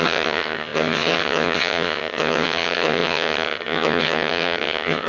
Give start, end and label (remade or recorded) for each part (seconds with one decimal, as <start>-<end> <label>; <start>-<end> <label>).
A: 0.0-5.1 remade